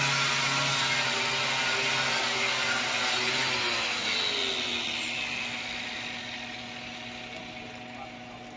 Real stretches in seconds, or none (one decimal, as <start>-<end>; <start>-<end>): 0.0-8.6